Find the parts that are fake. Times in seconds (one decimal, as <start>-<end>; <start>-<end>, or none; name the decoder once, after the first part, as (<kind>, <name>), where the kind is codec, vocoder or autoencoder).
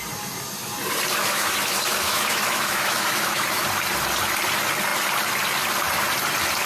1.2-3.6 (autoencoder, DAC-VAE)